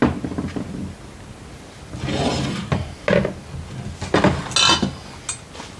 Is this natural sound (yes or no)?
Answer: yes